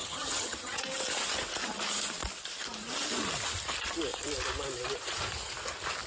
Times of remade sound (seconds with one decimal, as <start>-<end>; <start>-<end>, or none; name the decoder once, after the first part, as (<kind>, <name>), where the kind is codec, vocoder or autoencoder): 0.0-0.8 (vocoder, HiFi-GAN)